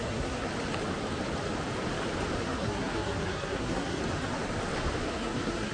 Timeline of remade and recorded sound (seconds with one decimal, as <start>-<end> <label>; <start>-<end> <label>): 0.0-0.5 remade; 0.5-2.4 recorded; 2.4-4.0 remade; 4.0-5.1 recorded; 5.1-5.7 remade